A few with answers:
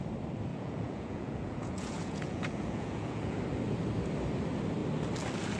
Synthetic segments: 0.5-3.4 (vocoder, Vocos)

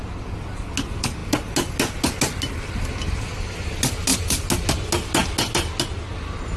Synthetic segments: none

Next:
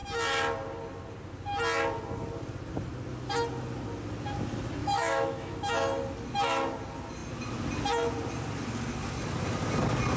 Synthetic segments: 4.8-5.7 (autoencoder, DAC-VAE)